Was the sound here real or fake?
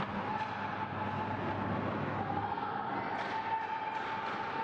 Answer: real